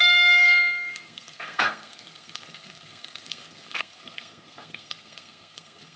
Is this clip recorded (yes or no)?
no